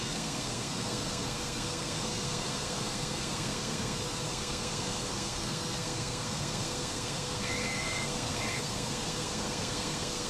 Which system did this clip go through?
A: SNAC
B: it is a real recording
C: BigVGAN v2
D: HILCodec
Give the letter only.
A